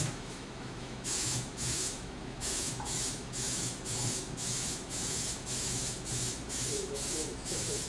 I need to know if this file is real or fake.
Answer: fake